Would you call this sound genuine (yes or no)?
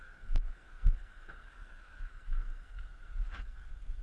no